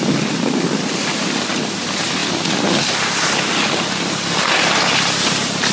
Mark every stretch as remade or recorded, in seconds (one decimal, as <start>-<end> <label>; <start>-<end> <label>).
0.0-5.7 recorded

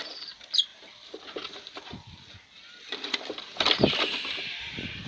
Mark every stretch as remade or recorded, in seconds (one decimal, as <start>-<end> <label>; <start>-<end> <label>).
0.0-5.1 recorded

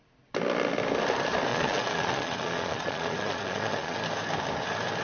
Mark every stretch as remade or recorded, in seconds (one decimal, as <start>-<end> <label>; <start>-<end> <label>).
0.0-1.5 recorded; 1.5-4.0 remade; 4.0-5.0 recorded

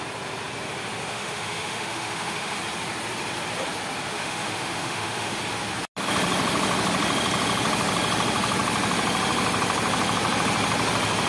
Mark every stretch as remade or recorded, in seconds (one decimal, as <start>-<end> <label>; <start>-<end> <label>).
0.0-1.1 recorded; 1.1-2.6 remade; 2.6-4.1 recorded; 4.1-5.4 remade; 5.4-11.3 recorded

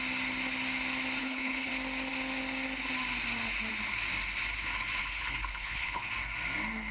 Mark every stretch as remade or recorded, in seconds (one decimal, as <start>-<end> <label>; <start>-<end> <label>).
0.0-1.2 recorded; 1.2-1.7 remade; 1.7-5.0 recorded; 5.0-6.1 remade; 6.1-6.9 recorded

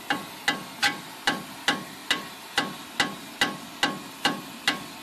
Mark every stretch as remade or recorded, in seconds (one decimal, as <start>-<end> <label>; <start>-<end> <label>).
0.0-5.0 recorded

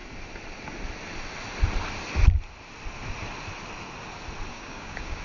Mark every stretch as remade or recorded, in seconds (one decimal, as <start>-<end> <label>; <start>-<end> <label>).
0.0-4.5 recorded; 4.5-5.2 remade

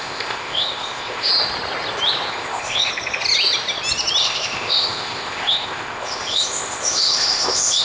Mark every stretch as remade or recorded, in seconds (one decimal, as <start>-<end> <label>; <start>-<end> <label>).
0.0-1.3 remade; 1.3-2.3 recorded; 2.3-2.9 remade; 2.9-4.2 recorded; 4.2-7.8 remade